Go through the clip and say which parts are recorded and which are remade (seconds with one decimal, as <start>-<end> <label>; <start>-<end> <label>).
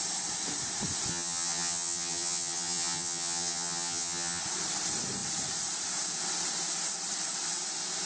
0.0-1.1 recorded; 1.1-4.4 remade; 4.4-8.1 recorded